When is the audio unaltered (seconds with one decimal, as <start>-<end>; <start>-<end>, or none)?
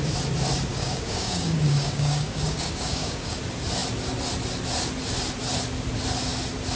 0.0-0.7; 3.4-6.8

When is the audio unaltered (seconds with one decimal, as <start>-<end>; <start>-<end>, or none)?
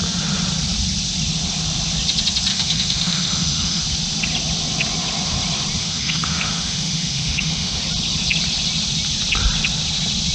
0.0-2.5; 3.8-5.8; 7.8-10.3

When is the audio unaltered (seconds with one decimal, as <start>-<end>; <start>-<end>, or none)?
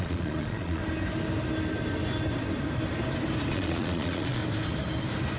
0.8-3.5; 4.4-5.4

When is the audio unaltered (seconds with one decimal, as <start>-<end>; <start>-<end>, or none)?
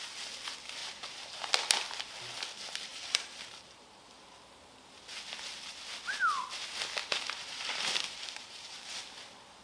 0.0-0.8; 1.5-2.9; 4.4-7.0; 9.0-9.6